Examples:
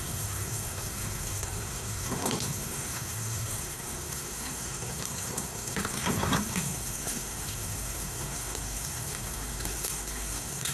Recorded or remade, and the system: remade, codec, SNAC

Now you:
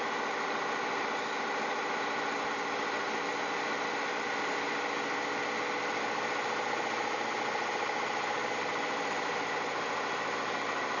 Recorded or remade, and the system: recorded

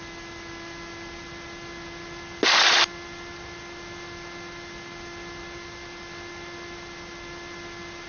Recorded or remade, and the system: recorded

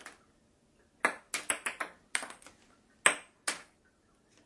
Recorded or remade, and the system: recorded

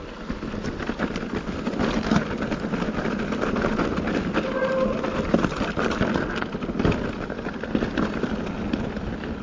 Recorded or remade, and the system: recorded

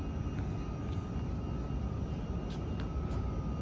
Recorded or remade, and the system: recorded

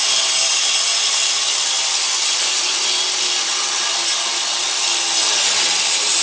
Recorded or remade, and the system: remade, vocoder, BigVGAN v2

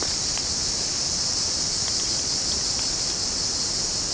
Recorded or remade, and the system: remade, vocoder, BigVGAN v2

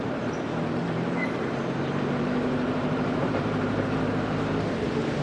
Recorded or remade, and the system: remade, vocoder, BigVGAN v2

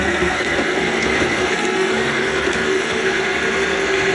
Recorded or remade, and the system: remade, codec, SNAC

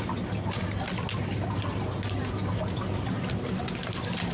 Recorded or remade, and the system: recorded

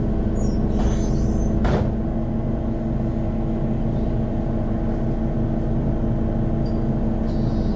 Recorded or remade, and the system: recorded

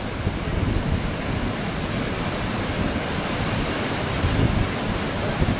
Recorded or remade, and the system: recorded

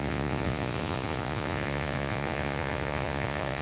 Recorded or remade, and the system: remade, vocoder, Vocos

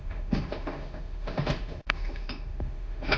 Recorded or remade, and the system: remade, autoencoder, DAC-VAE